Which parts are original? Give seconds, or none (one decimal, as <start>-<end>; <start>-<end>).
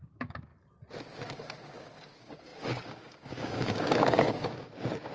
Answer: 0.5-1.3